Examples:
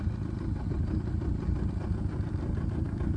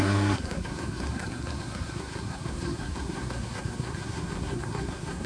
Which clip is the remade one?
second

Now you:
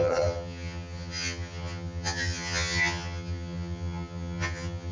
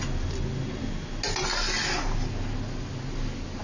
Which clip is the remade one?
first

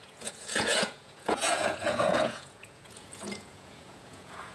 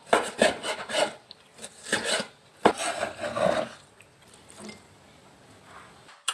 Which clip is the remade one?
first